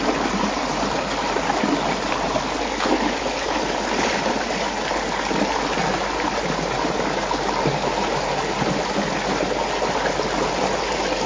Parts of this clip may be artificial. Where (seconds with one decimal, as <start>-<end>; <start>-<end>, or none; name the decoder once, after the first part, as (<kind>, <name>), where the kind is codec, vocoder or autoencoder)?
none